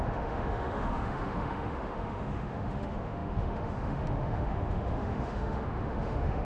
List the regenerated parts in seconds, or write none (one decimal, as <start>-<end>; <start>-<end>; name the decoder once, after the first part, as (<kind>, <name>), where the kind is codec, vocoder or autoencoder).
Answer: 0.0-6.4 (autoencoder, DAC-VAE)